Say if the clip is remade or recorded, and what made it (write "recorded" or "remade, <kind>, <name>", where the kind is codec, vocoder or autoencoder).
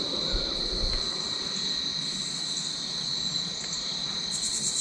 recorded